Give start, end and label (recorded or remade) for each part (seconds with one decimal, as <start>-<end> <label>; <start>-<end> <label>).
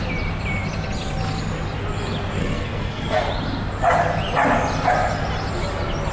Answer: 0.0-2.4 recorded; 2.4-3.3 remade; 3.3-6.1 recorded